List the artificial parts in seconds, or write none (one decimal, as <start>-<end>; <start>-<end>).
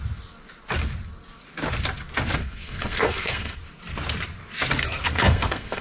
2.4-3.6; 4.8-5.8